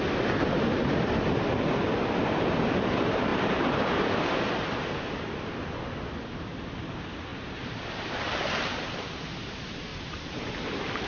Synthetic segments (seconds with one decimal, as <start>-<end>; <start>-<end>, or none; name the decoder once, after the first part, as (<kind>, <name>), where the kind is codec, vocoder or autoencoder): 3.3-4.4 (vocoder, BigVGAN v2); 7.3-8.2; 9.9-10.5